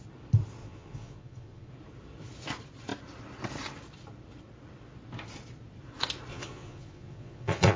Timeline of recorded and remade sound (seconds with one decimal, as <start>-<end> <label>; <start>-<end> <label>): 0.0-0.6 recorded; 0.6-1.7 remade; 1.7-6.3 recorded; 6.3-7.8 remade